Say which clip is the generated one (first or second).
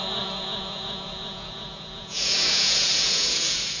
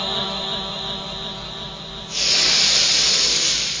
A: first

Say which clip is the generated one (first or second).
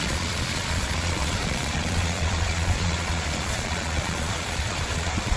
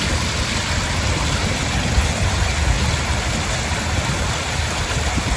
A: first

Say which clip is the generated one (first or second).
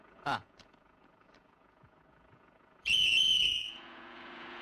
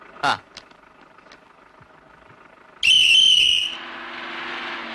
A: first